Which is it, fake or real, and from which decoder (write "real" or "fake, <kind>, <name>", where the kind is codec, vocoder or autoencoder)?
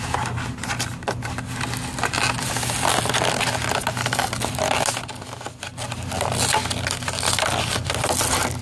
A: real